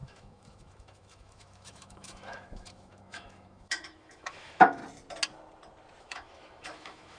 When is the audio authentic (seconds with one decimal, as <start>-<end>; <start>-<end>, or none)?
4.8-6.0